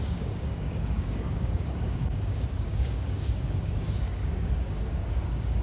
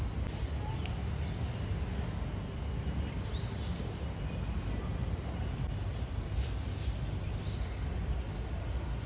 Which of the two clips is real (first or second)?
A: second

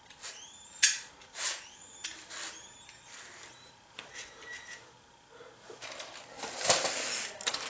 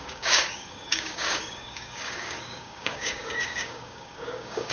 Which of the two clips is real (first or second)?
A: first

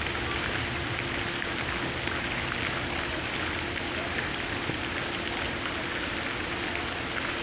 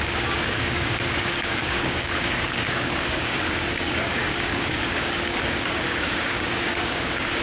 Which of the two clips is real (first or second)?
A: first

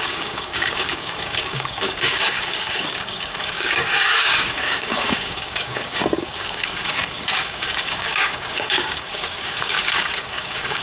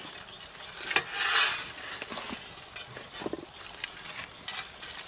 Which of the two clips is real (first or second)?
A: second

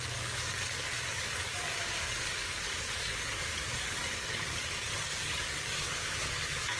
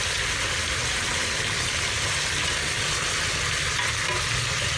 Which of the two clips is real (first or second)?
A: second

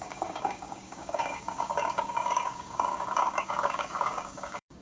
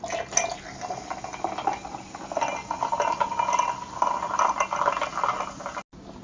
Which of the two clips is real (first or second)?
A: second